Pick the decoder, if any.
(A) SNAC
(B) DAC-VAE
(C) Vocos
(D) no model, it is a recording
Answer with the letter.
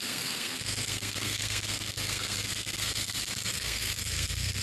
A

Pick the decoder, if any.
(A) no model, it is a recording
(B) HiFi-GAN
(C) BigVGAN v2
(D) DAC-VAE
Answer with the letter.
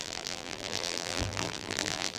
C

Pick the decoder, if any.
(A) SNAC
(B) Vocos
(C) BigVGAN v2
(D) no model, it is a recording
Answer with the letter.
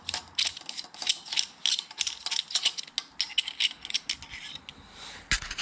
D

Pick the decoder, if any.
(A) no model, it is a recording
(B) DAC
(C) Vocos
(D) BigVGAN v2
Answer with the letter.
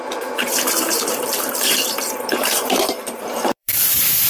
D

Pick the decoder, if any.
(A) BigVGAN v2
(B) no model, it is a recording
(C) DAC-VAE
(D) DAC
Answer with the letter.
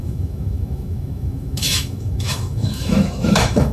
C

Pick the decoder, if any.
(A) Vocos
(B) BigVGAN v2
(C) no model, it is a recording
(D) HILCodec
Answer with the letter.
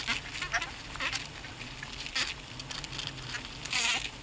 C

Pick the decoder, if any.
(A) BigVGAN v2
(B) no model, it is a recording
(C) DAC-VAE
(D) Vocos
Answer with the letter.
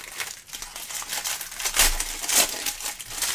B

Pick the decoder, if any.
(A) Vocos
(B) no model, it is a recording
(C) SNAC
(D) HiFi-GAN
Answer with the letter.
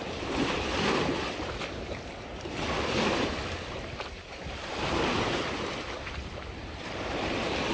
B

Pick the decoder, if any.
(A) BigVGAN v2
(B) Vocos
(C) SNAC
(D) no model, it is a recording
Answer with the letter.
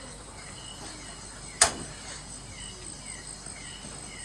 D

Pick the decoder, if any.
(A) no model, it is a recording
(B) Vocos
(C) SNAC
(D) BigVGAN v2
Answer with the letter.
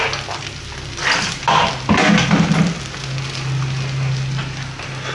A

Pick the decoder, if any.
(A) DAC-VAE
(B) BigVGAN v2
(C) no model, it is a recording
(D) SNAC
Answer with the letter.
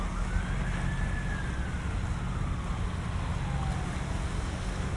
C